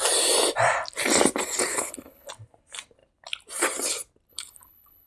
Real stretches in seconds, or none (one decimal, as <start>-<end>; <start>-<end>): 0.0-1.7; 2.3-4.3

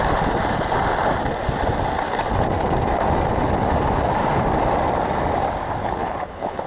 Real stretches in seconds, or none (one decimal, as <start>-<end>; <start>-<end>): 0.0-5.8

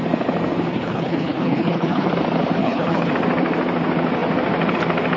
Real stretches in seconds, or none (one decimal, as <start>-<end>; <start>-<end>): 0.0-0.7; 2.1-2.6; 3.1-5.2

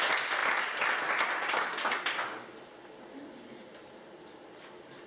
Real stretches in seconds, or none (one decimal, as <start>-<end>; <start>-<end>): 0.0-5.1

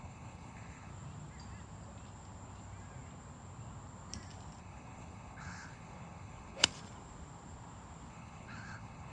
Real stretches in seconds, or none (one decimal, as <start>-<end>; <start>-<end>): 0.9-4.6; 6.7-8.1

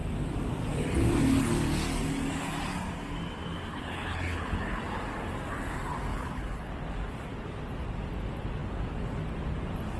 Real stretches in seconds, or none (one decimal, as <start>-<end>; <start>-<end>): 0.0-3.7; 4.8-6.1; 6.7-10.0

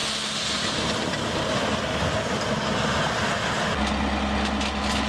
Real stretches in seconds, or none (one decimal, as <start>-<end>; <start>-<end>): 0.0-5.1

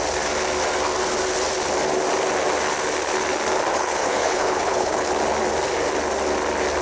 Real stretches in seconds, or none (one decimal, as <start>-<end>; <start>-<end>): 0.0-3.7; 5.1-6.8